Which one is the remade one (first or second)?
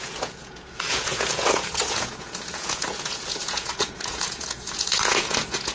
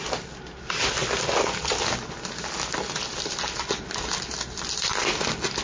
first